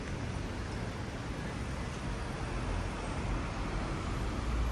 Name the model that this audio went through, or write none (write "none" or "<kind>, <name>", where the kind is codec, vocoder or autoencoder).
none